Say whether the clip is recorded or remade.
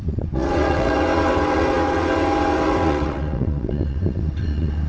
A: remade